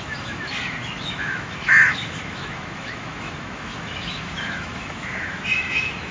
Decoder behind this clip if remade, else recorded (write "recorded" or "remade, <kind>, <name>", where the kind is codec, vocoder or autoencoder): remade, autoencoder, DAC-VAE